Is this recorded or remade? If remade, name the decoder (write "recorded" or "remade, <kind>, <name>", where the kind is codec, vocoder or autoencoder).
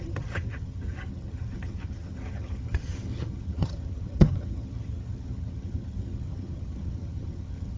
remade, vocoder, HiFi-GAN